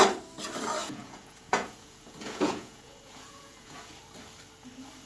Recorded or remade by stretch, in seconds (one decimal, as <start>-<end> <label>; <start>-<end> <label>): 0.0-0.8 recorded; 0.8-3.9 remade; 3.9-5.1 recorded